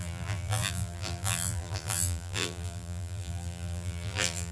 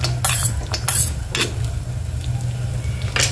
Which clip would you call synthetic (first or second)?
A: first